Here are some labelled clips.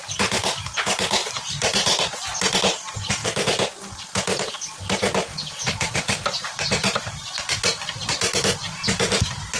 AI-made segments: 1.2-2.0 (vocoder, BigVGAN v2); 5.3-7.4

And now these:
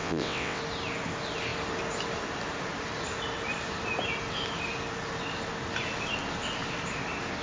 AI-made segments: 0.0-0.6 (vocoder, WaveNeXt)

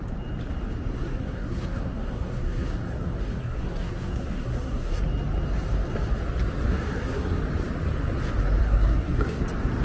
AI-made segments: 0.9-5.0 (codec, SNAC); 6.7-7.4; 8.6-9.4